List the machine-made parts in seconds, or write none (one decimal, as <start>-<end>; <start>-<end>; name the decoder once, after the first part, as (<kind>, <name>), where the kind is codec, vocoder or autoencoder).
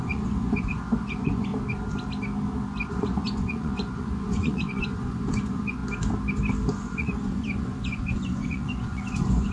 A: 0.0-1.5 (vocoder, Vocos); 2.9-5.8; 6.8-9.5